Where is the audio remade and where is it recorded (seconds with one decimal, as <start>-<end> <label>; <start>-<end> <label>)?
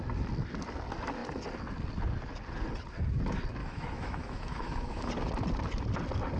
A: 0.0-3.6 recorded; 3.6-5.1 remade; 5.1-6.4 recorded